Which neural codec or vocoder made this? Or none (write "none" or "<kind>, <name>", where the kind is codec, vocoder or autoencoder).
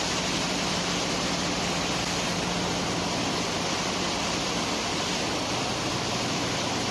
vocoder, BigVGAN v2